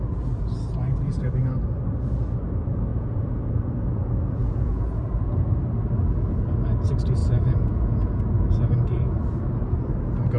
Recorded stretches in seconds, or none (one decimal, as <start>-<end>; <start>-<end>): 0.0-2.9; 3.5-4.4; 5.0-7.2; 8.2-10.4